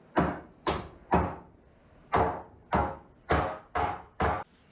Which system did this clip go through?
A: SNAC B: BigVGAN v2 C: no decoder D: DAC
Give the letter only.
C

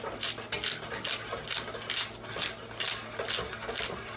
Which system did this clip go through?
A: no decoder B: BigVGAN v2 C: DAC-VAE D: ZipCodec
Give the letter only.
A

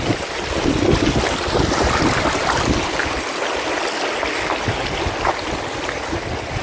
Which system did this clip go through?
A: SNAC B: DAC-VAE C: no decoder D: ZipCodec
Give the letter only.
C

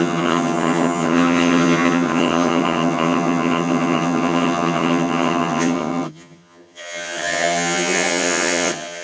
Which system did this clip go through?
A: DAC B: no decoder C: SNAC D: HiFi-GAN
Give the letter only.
D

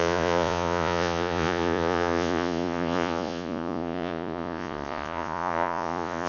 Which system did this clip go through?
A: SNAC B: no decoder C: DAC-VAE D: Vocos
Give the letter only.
D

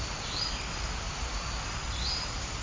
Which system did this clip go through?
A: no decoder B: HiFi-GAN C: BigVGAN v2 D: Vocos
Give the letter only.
A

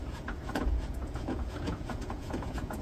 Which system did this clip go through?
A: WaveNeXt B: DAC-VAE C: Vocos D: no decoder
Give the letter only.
C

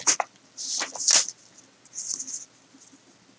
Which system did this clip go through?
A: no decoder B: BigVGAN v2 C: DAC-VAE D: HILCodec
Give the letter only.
A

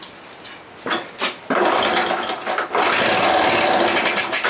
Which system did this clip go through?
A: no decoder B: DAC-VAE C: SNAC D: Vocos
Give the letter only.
A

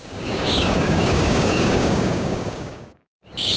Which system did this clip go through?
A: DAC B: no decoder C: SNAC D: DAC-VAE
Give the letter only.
A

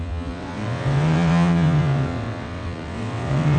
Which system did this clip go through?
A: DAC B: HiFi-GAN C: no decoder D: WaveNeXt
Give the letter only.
D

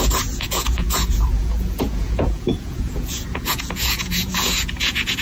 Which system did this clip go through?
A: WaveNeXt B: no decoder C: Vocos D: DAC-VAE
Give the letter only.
C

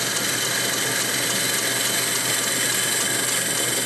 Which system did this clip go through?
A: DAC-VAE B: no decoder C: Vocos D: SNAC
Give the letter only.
B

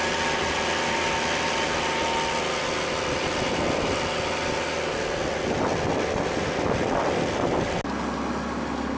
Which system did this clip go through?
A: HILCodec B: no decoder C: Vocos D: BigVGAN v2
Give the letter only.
B